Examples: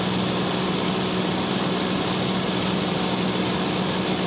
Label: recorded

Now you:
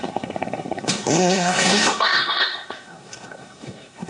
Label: remade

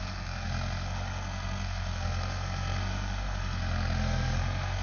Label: remade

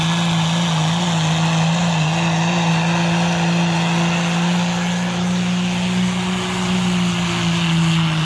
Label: recorded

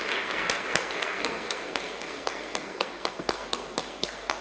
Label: remade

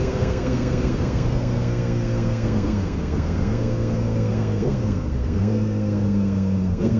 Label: remade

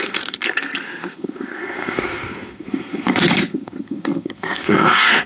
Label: remade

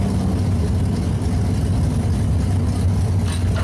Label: recorded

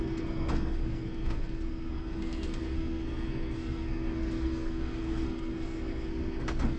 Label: remade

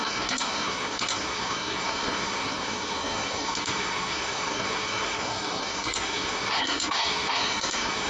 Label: remade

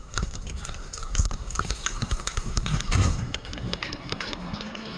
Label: remade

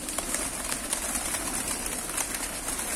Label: recorded